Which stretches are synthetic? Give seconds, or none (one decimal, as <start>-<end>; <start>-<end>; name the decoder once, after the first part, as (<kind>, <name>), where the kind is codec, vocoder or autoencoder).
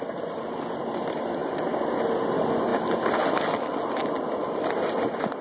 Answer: none